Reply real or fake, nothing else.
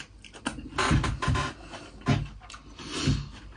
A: real